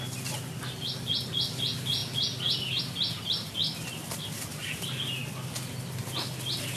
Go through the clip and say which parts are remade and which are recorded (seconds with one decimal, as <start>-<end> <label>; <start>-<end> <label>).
0.0-6.8 recorded

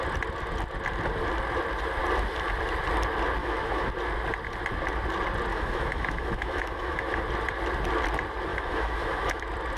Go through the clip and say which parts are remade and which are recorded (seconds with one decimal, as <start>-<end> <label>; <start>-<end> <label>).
0.0-3.4 recorded; 3.4-3.9 remade; 3.9-5.5 recorded; 5.5-7.2 remade; 7.2-8.5 recorded; 8.5-9.4 remade; 9.4-9.8 recorded

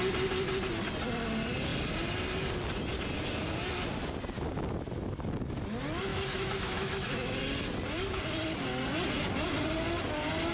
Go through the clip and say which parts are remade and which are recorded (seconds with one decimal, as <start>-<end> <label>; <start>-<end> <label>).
0.0-6.1 recorded; 6.1-7.4 remade; 7.4-10.5 recorded

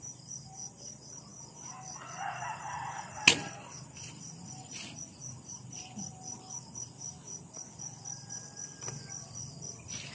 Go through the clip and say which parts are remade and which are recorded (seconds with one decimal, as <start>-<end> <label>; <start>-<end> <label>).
0.0-10.1 recorded

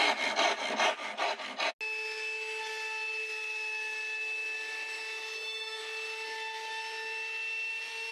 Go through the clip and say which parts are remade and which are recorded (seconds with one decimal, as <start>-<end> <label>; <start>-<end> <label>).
0.0-5.0 recorded; 5.0-5.8 remade; 5.8-8.1 recorded

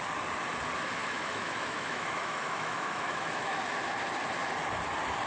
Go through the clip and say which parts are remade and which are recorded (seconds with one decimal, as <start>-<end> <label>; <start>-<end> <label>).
0.0-1.0 recorded; 1.0-3.6 remade; 3.6-5.3 recorded

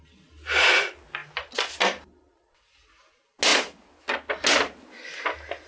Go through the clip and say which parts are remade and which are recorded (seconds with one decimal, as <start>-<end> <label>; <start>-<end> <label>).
0.0-5.7 recorded

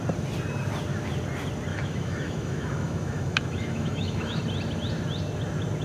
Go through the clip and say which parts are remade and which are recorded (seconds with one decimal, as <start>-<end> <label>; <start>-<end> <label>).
0.0-1.7 recorded; 1.7-4.4 remade; 4.4-5.8 recorded